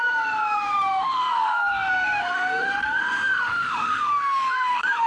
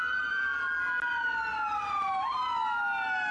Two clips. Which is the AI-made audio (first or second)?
first